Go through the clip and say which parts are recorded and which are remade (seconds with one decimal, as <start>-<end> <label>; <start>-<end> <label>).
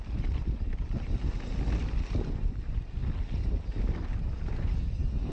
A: 0.0-5.3 recorded